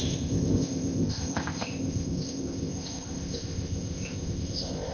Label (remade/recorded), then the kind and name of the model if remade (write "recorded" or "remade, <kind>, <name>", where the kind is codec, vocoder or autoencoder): remade, codec, ZipCodec